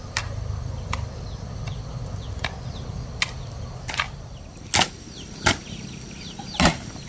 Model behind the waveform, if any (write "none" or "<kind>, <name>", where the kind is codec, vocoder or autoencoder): none